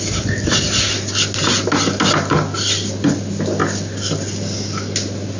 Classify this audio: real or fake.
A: real